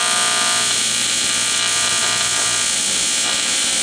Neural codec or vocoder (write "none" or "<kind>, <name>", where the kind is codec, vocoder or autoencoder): none